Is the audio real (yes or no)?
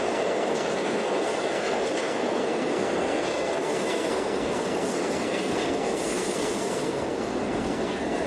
no